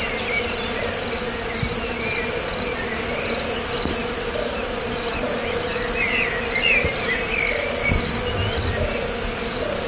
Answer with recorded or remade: recorded